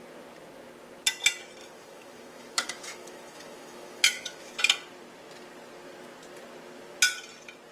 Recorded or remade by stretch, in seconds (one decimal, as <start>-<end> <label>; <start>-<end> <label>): 0.0-1.6 recorded; 1.6-4.6 remade; 4.6-7.7 recorded